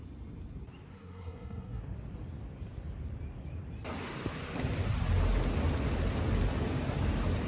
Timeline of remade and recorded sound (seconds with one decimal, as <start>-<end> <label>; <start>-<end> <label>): 0.0-0.9 recorded; 0.9-1.8 remade; 1.8-7.5 recorded